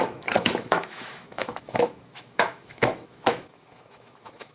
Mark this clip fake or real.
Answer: fake